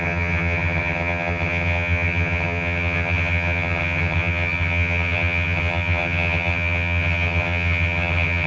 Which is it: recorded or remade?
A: remade